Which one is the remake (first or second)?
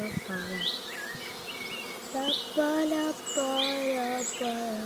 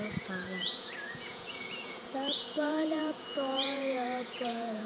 second